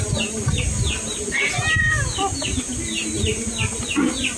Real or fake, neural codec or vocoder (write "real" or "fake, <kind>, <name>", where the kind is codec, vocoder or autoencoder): real